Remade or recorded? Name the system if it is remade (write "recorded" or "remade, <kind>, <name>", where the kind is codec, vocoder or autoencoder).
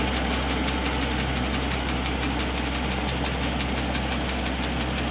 recorded